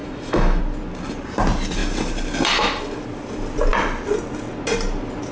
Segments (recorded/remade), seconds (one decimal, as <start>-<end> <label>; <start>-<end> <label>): 0.0-0.6 remade; 0.6-5.3 recorded